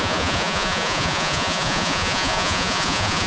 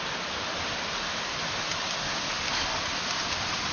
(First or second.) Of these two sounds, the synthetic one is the first